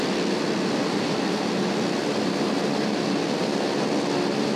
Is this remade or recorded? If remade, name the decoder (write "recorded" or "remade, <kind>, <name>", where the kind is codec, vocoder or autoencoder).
recorded